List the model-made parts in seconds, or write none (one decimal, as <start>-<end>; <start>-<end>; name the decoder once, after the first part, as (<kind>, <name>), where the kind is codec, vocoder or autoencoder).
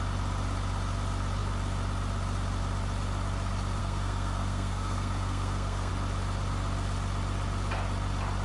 3.8-5.9 (codec, SNAC)